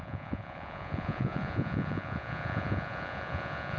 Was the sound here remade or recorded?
remade